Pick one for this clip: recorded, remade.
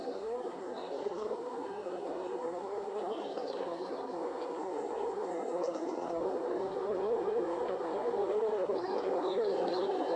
remade